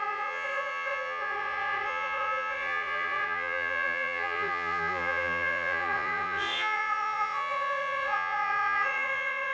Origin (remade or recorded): remade